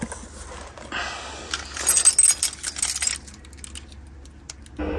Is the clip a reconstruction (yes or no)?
no